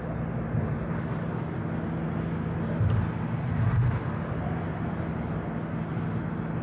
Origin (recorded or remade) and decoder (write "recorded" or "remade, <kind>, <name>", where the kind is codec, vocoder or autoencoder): recorded